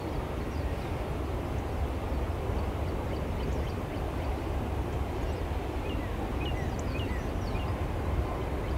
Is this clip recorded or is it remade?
recorded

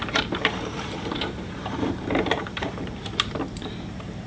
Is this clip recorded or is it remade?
remade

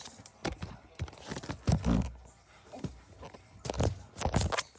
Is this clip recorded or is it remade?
recorded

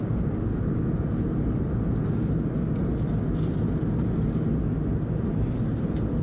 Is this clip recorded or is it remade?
recorded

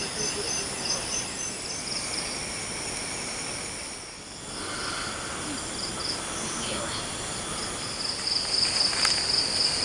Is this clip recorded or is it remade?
recorded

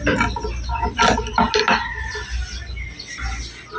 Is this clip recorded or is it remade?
recorded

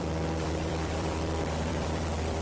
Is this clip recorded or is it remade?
remade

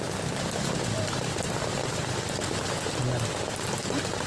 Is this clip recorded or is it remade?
remade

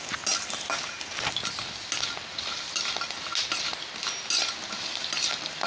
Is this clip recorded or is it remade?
recorded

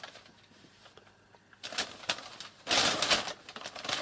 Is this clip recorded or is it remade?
recorded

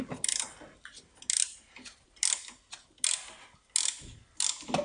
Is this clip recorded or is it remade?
recorded